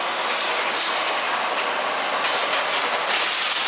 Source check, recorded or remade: recorded